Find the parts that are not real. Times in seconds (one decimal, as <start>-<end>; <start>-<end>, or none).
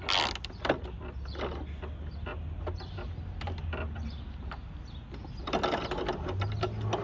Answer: none